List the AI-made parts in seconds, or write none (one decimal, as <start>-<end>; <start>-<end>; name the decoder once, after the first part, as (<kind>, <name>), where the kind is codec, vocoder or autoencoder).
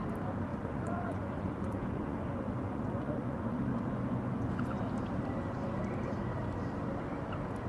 0.5-4.8 (vocoder, Vocos)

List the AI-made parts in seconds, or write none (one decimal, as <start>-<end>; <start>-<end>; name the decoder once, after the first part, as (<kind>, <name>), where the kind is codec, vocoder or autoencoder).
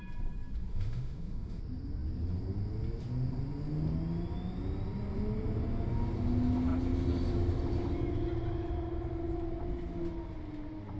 0.7-1.6 (autoencoder, DAC-VAE)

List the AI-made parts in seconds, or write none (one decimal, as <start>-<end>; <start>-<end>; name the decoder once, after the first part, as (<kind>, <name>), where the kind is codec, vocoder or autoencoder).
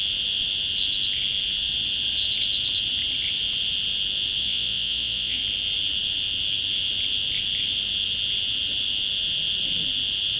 4.4-5.4 (vocoder, Vocos)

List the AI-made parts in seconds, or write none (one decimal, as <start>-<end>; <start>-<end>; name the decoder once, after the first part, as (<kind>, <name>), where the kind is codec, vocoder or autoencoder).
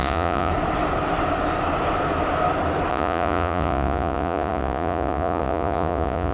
0.0-0.5 (vocoder, Vocos); 2.9-6.3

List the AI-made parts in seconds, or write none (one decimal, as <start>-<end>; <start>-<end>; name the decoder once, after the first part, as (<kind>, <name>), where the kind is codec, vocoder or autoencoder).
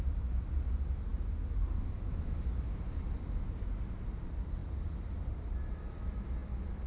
none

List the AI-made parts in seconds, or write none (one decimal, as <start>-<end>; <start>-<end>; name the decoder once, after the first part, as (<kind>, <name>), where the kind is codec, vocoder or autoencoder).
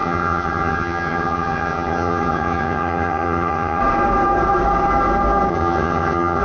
0.0-3.8 (vocoder, HiFi-GAN); 5.5-6.4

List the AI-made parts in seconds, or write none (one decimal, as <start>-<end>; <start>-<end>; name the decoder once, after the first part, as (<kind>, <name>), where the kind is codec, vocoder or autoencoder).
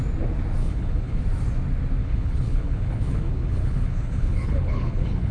0.6-1.2 (codec, HILCodec); 2.0-5.3